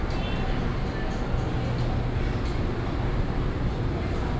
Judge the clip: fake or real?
real